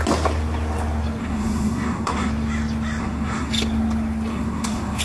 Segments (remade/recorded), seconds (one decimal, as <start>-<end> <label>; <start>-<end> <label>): 0.0-1.2 recorded; 1.2-2.3 remade; 2.3-3.0 recorded; 3.0-3.5 remade; 3.5-4.3 recorded; 4.3-5.0 remade